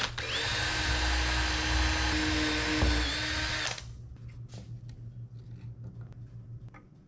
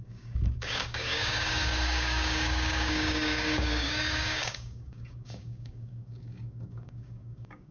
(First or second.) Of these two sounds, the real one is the first